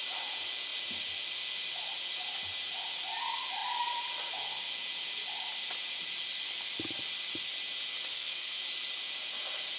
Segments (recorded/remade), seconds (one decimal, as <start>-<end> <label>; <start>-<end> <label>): 0.0-8.1 recorded; 8.1-8.6 remade; 8.6-9.8 recorded

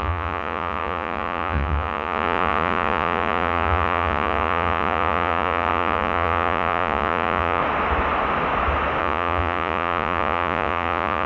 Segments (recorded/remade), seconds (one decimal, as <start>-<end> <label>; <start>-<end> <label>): 0.0-7.6 remade; 7.6-9.0 recorded; 9.0-11.3 remade